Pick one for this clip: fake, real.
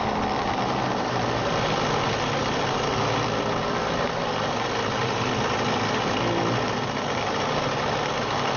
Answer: real